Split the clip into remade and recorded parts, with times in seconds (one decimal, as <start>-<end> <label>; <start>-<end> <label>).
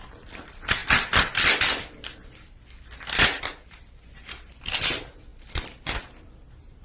0.0-6.8 recorded